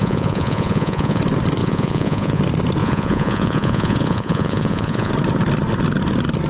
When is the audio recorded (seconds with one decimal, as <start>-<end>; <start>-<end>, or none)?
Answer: 1.2-1.6; 2.4-2.8; 5.1-6.5